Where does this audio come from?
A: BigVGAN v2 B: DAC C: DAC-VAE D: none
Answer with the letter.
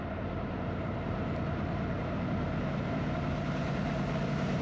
A